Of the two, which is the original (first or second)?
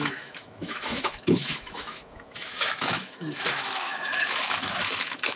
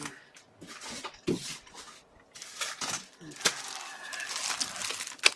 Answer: second